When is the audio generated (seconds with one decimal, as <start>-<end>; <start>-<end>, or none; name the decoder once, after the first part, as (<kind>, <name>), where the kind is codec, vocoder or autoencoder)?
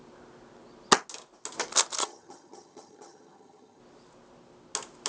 2.0-3.8 (vocoder, HiFi-GAN)